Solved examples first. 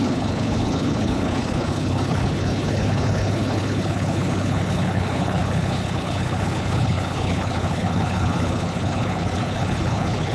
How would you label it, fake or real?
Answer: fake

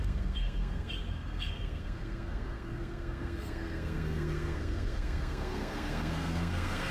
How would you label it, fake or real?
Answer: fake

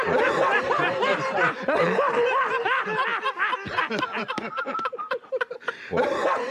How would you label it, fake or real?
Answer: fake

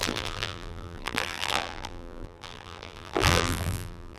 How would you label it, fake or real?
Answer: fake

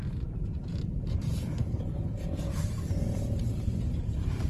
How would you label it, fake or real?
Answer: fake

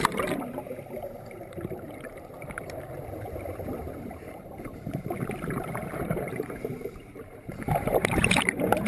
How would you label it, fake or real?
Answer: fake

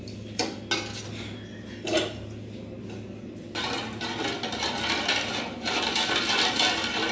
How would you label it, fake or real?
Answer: real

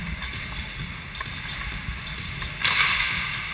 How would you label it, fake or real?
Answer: real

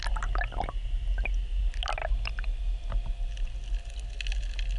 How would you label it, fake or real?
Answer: real